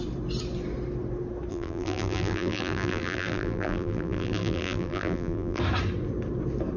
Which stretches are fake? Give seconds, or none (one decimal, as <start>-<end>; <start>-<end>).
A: 1.5-5.6

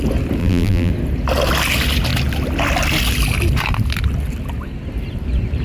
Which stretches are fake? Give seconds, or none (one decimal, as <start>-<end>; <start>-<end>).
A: 0.4-0.9

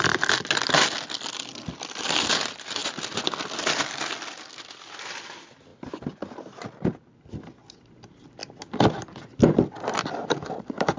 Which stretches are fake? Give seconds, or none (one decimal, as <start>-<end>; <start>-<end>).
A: 0.0-2.8; 4.7-5.7; 7.9-8.4; 10.6-11.0